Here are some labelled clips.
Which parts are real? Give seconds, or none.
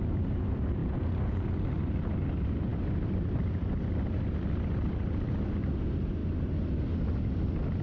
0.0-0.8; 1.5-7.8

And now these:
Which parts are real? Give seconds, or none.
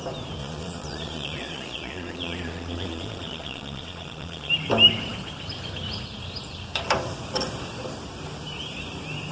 0.0-0.4; 4.5-9.3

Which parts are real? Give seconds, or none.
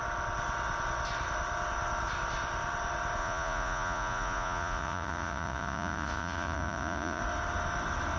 0.0-3.2; 7.2-8.2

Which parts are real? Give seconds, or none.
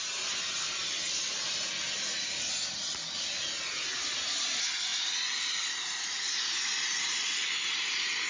0.0-8.3